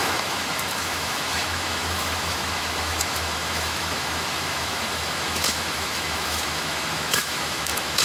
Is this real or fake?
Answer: fake